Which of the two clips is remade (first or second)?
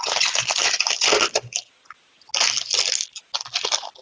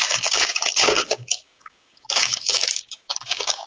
second